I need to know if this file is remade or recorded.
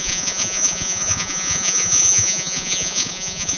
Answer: remade